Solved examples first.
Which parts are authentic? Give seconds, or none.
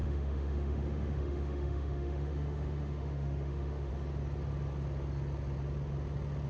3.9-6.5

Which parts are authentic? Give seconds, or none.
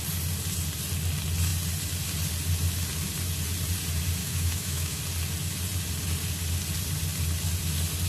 0.0-4.2; 5.0-8.1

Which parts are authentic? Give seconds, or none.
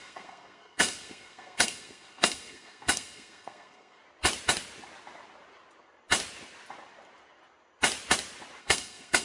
4.0-8.6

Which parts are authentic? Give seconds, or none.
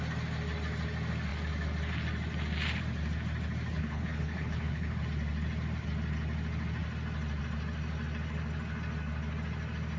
0.0-3.7; 5.0-10.0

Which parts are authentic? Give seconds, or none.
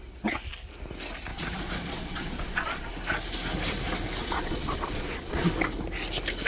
0.0-1.3; 2.9-4.2; 5.5-6.5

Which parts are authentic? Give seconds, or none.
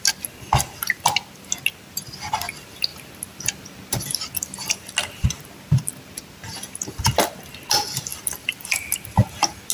0.0-8.1; 9.0-9.7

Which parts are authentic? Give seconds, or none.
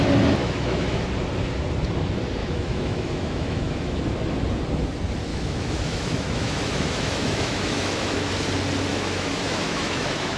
0.0-0.4; 1.1-2.4; 4.0-5.3; 8.3-8.9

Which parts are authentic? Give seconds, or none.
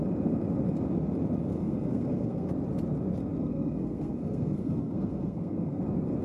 0.0-1.5; 2.5-3.4; 5.8-6.2